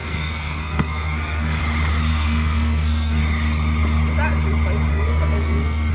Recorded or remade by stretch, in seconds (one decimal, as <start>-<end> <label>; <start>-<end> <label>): 0.0-1.6 remade; 1.6-2.1 recorded; 2.1-3.2 remade; 3.2-4.9 recorded; 4.9-5.9 remade